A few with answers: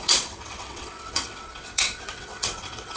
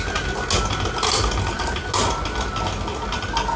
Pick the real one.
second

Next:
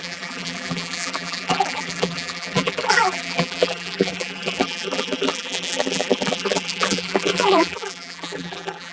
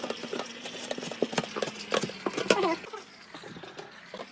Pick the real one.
second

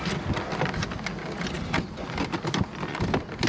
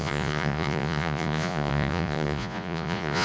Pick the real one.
first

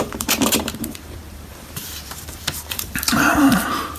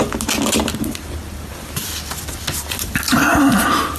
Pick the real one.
second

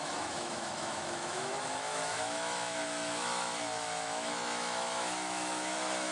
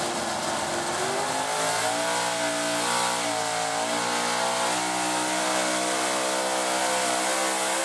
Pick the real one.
second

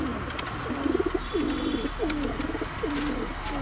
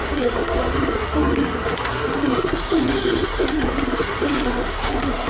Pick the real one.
first